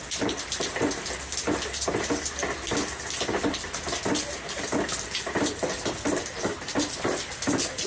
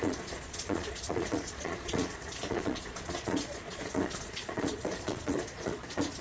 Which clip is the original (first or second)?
first